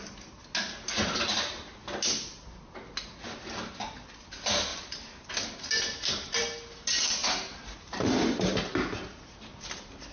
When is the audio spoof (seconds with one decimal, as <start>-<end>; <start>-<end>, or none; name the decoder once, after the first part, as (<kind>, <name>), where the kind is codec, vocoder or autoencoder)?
4.7-5.3 (vocoder, BigVGAN v2); 7.2-8.6